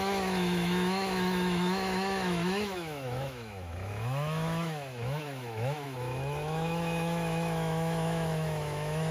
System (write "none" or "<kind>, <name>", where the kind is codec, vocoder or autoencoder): autoencoder, DAC-VAE